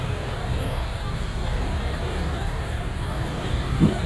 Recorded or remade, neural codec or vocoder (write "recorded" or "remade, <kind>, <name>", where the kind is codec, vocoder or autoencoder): remade, codec, DAC